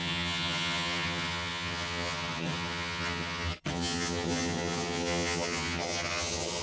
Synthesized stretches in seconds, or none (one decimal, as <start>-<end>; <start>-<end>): 0.0-6.6